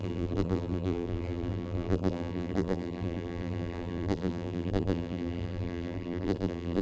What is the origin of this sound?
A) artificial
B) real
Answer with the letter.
A